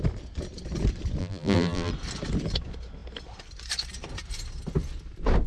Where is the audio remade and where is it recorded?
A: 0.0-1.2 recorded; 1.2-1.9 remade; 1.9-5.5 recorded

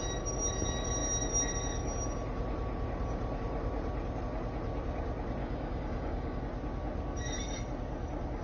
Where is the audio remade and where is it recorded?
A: 0.0-5.4 recorded; 5.4-6.4 remade; 6.4-8.4 recorded

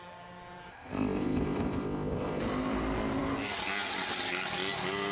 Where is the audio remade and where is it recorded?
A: 0.0-0.7 recorded; 0.7-2.4 remade; 2.4-5.1 recorded

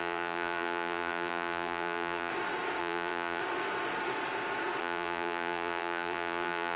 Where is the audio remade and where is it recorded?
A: 0.0-2.3 remade; 2.3-2.8 recorded; 2.8-3.4 remade; 3.4-4.8 recorded; 4.8-6.8 remade

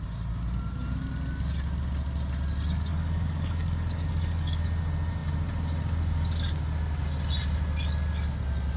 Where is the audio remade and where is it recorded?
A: 0.0-2.9 recorded; 2.9-4.6 remade; 4.6-8.8 recorded